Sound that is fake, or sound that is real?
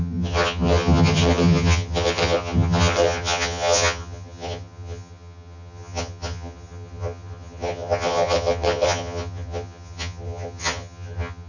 fake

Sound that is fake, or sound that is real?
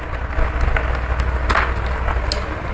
real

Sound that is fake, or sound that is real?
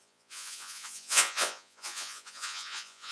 fake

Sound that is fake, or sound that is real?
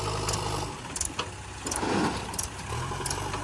real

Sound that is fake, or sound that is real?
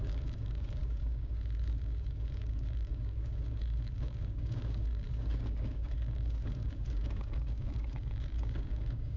fake